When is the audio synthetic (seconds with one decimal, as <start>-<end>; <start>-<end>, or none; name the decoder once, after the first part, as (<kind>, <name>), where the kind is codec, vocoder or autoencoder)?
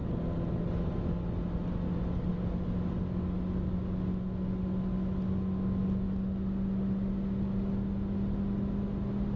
none